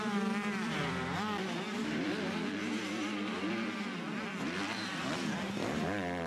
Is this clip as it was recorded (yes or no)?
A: no